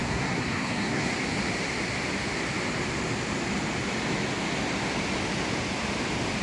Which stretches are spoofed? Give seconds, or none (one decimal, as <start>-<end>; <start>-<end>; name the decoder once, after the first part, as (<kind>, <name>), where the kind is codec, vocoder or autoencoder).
0.0-1.1 (codec, SNAC)